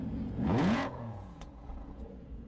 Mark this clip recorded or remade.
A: remade